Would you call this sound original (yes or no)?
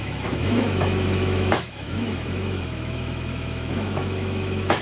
no